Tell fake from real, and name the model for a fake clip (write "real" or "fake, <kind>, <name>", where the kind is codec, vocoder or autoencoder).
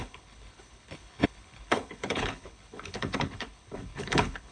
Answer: fake, codec, HILCodec